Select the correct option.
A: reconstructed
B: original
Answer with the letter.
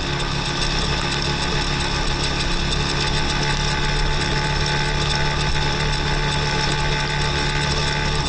B